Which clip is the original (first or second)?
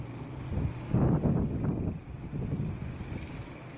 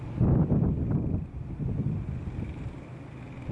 first